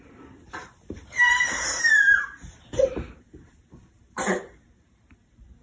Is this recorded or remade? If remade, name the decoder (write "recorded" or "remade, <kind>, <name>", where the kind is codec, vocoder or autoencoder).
remade, vocoder, BigVGAN v2